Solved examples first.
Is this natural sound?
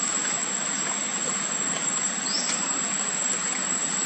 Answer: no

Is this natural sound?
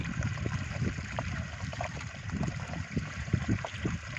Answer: no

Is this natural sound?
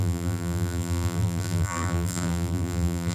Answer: no